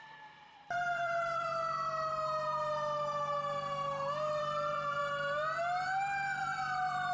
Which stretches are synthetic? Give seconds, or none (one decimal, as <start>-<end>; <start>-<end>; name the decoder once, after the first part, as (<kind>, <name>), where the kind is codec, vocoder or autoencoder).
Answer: 0.0-1.5 (vocoder, BigVGAN v2); 4.4-5.0; 6.4-7.1